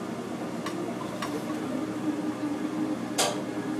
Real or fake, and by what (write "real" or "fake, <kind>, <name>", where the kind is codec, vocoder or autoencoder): real